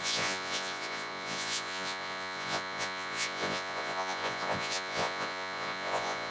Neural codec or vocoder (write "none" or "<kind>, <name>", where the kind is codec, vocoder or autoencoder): vocoder, Vocos